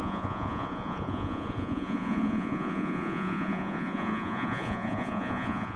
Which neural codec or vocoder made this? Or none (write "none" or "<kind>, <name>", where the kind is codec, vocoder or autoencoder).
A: vocoder, Vocos